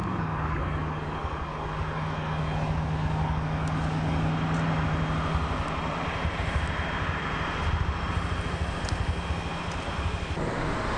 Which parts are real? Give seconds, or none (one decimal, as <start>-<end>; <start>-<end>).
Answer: 4.3-11.0